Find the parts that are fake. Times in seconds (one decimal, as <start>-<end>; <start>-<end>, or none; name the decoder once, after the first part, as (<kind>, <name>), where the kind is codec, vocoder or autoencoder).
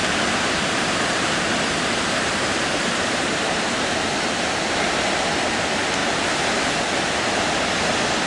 0.0-6.0 (vocoder, BigVGAN v2)